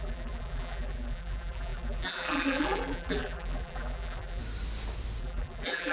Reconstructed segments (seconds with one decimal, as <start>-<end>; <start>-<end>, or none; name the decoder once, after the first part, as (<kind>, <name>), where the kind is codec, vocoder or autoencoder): 0.0-4.4 (vocoder, BigVGAN v2); 5.2-5.9